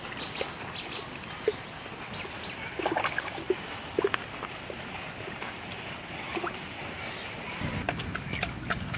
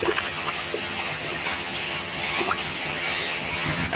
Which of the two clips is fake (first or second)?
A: second